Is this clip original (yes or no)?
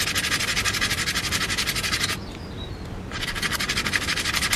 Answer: yes